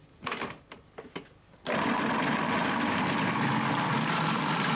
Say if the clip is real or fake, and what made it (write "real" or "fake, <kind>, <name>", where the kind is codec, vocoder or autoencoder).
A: real